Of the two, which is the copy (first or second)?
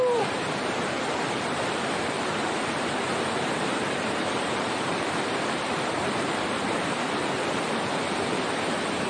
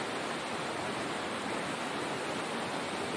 first